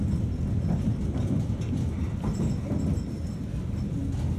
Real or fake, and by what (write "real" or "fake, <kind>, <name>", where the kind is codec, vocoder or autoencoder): real